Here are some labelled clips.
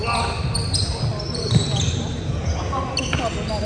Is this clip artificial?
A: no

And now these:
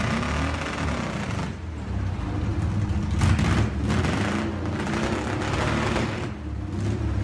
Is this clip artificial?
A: no